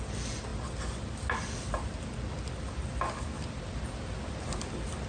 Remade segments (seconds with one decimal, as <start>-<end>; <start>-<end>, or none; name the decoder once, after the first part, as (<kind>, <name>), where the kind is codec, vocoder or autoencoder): none

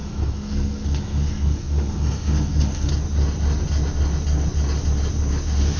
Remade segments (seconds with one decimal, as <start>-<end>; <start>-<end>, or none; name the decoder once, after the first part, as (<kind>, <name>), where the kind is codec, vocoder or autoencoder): 0.0-2.9 (codec, SNAC)

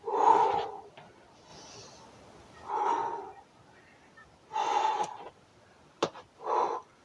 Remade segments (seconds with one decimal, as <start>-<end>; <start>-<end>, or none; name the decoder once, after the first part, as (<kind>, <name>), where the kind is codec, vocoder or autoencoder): none

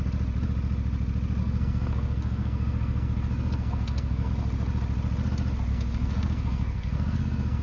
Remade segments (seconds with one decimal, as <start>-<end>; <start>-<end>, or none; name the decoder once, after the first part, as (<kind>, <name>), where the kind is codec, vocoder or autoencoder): 1.4-4.3 (codec, SNAC); 5.7-7.6

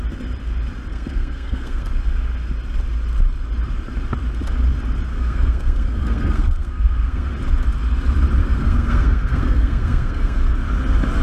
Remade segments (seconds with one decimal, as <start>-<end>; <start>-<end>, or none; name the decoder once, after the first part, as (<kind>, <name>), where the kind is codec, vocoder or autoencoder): 0.9-1.9 (codec, SNAC); 5.1-7.3; 8.4-10.6